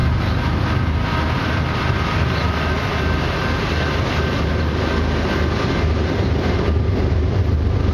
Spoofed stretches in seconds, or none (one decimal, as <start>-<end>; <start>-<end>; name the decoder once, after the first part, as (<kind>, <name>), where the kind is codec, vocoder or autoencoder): none